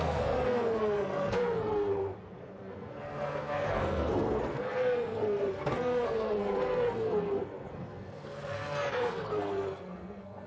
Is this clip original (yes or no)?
no